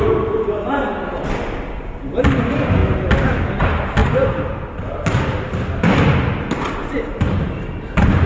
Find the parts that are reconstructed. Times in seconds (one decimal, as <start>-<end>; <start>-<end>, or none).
0.0-0.9; 1.7-2.8; 3.6-4.0; 6.8-8.3